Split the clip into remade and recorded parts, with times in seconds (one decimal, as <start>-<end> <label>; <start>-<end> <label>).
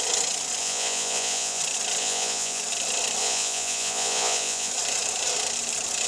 0.0-0.6 recorded; 0.6-1.6 remade; 1.6-2.0 recorded; 2.0-2.6 remade; 2.6-3.2 recorded; 3.2-4.7 remade; 4.7-6.1 recorded